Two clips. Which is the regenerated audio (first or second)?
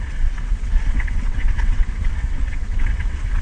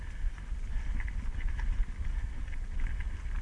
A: first